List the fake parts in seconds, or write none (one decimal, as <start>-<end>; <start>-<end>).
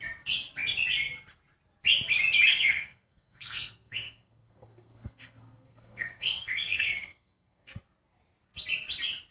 2.5-7.7